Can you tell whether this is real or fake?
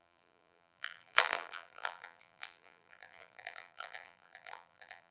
fake